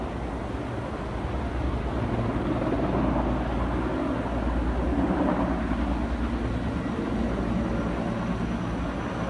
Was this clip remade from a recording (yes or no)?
no